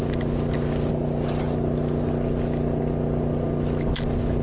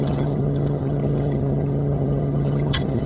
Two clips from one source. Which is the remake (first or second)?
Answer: second